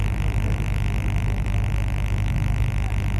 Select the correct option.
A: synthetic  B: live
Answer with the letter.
B